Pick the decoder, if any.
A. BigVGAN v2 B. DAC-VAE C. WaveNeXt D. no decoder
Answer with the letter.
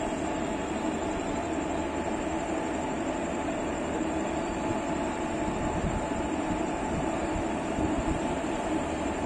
A